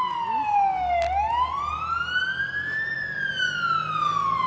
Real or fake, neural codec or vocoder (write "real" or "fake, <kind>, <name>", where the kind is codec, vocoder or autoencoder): real